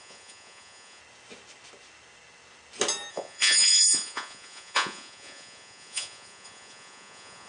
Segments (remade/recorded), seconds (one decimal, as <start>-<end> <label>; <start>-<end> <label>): 0.0-1.0 remade; 1.0-3.1 recorded; 3.1-7.5 remade